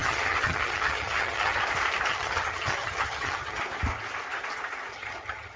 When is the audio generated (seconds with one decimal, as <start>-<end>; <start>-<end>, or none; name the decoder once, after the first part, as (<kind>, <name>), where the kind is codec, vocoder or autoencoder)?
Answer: 0.0-1.6 (vocoder, HiFi-GAN); 2.1-3.6; 4.9-5.6